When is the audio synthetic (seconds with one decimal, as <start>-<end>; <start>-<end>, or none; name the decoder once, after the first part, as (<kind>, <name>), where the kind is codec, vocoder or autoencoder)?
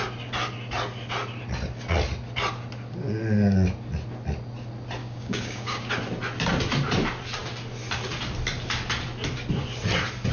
5.0-5.9 (codec, DAC)